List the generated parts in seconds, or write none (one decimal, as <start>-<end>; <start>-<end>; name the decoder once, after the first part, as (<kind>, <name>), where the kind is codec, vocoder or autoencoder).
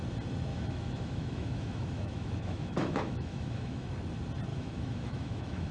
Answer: 0.5-3.9 (autoencoder, DAC-VAE); 4.5-5.7